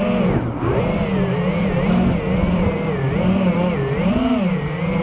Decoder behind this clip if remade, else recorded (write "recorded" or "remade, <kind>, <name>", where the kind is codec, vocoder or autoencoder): recorded